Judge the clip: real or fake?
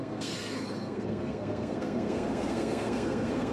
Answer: fake